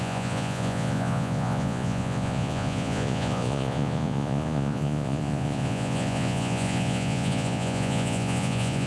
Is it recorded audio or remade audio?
remade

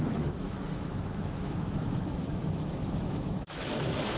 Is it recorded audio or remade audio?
remade